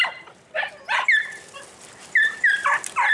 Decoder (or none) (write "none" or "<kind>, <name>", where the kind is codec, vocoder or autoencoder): none